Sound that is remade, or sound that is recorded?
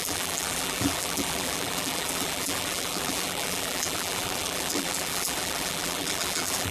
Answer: remade